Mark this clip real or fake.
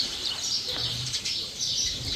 fake